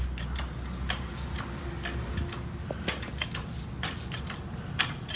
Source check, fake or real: real